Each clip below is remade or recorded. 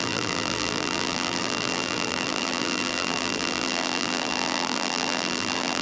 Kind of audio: remade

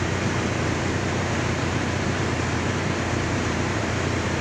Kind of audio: remade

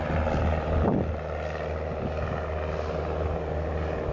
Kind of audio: recorded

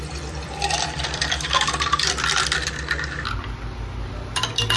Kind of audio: remade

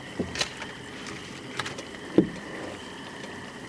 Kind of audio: recorded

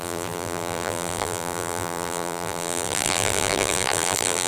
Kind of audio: remade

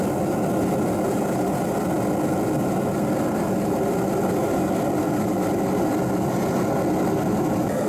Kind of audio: recorded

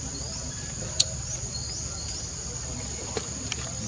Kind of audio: remade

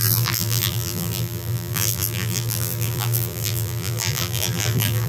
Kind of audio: remade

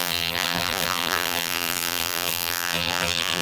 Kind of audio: remade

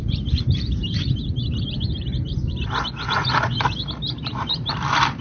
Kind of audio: remade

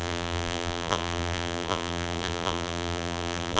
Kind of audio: remade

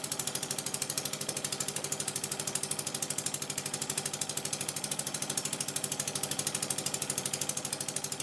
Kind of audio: remade